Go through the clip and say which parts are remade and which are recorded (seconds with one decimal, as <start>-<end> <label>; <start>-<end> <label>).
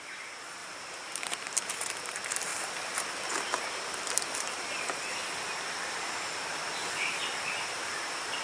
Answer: 0.0-2.5 remade; 2.5-7.0 recorded; 7.0-8.4 remade